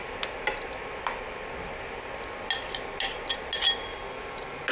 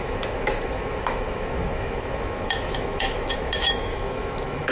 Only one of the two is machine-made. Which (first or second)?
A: second